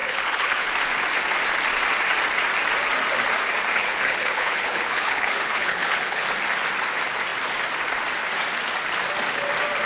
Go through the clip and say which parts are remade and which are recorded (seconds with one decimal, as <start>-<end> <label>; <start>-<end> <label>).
0.0-0.7 remade; 0.7-3.7 recorded; 3.7-6.2 remade; 6.2-9.9 recorded